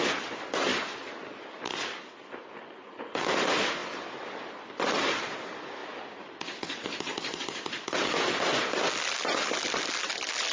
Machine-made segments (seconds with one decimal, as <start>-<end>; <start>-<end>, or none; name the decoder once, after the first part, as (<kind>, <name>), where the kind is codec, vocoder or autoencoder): none